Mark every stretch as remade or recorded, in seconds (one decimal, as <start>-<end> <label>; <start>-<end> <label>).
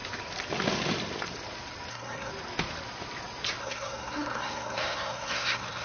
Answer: 0.0-1.9 recorded; 1.9-2.3 remade; 2.3-3.6 recorded; 3.6-5.8 remade